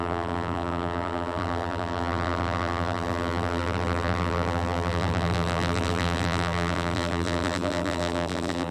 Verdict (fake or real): fake